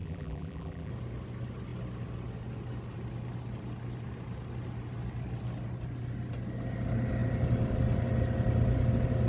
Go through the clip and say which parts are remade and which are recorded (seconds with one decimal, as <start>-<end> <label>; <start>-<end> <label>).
0.0-0.9 remade; 0.9-9.3 recorded